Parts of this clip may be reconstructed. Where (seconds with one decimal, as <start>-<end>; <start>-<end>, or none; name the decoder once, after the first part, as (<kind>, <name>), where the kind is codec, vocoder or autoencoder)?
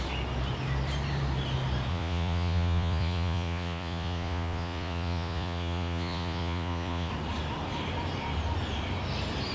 1.9-7.1 (vocoder, Vocos)